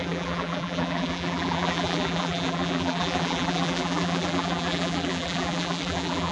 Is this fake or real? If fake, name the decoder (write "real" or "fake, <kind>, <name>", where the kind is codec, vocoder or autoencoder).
fake, vocoder, BigVGAN v2